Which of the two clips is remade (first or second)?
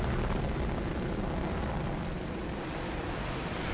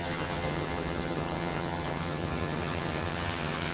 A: second